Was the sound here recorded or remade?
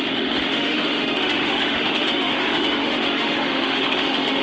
remade